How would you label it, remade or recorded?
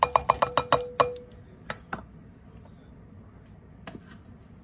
recorded